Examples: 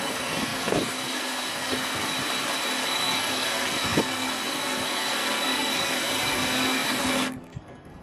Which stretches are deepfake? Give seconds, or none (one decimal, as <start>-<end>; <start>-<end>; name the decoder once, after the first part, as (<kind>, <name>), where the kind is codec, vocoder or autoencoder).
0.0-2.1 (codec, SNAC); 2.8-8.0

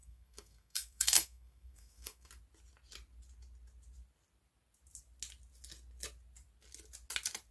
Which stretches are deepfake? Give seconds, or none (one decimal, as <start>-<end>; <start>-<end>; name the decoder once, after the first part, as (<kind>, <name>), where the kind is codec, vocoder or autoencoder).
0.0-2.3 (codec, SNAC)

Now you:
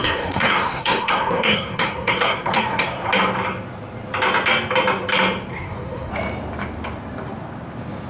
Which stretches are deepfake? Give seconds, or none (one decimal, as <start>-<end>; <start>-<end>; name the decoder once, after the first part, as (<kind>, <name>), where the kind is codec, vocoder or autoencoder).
0.0-3.1 (codec, SNAC); 5.5-6.1